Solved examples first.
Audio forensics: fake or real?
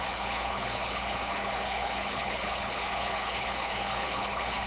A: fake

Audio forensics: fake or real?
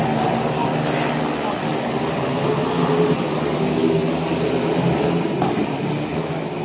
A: real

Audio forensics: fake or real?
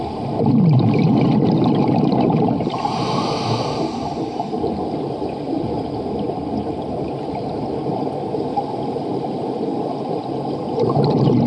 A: real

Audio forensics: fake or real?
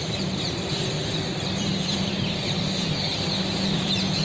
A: fake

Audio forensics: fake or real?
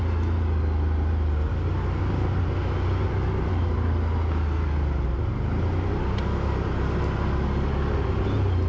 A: real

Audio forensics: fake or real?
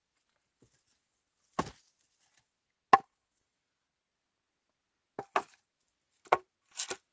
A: real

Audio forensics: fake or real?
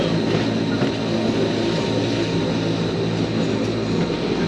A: real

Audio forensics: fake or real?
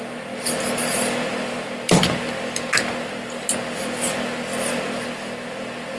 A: real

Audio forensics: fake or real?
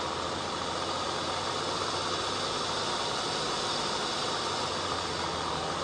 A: real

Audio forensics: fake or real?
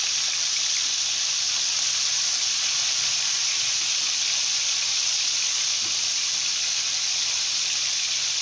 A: real